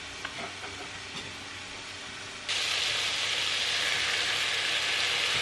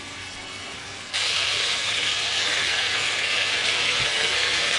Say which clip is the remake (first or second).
second